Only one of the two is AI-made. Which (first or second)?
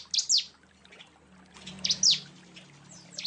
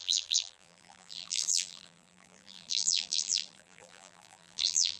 second